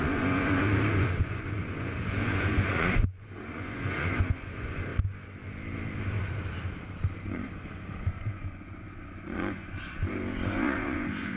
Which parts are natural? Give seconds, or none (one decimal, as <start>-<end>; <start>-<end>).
4.9-7.2

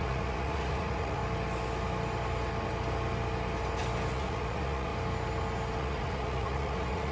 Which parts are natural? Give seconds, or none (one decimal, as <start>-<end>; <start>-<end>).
1.2-4.1; 4.9-5.8

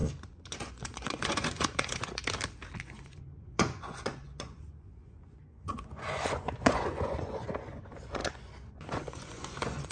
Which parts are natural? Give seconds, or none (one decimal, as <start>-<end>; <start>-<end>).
2.2-2.8

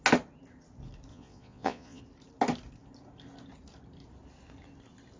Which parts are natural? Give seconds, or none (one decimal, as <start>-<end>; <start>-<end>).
0.0-1.1; 2.0-5.2

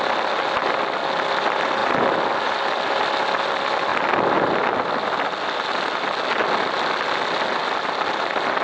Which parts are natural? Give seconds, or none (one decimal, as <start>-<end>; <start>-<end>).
0.0-8.6

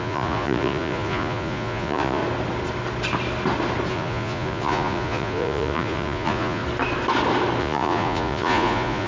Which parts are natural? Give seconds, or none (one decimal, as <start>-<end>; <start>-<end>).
2.2-3.9; 6.6-7.6